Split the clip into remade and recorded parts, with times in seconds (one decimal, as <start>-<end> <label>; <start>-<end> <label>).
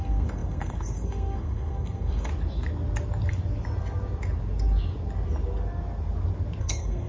0.0-2.3 remade; 2.3-6.6 recorded; 6.6-7.1 remade